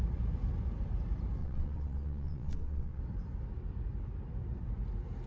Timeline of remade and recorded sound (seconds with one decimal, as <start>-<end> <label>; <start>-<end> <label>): 0.0-1.4 recorded; 1.4-3.0 remade; 3.0-5.3 recorded